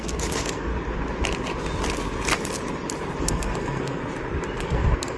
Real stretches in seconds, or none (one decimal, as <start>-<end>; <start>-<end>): 0.7-3.2; 4.0-4.6